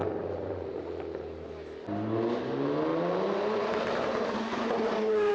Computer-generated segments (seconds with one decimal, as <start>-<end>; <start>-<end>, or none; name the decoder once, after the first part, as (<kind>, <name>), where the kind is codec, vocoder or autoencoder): 0.0-1.0 (vocoder, BigVGAN v2); 2.9-5.3